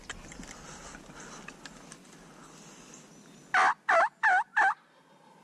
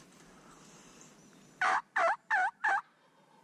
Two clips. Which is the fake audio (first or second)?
second